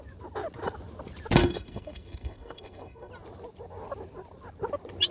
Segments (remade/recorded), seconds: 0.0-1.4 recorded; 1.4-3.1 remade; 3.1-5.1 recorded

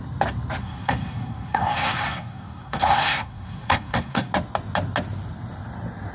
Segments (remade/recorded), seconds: 0.0-0.6 recorded; 0.6-4.3 remade; 4.3-6.1 recorded

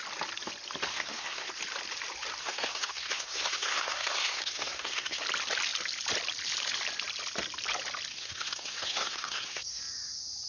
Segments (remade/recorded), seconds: 0.0-0.9 recorded; 0.9-1.5 remade; 1.5-2.4 recorded; 2.4-5.2 remade; 5.2-8.1 recorded; 8.1-9.8 remade; 9.8-10.5 recorded